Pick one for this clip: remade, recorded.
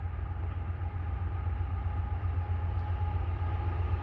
recorded